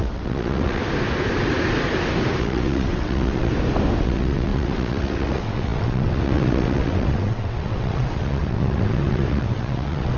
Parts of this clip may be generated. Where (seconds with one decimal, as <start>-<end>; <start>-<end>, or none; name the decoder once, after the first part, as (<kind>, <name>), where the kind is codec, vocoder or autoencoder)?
0.0-0.8 (vocoder, WaveNeXt); 2.4-3.5; 4.0-10.2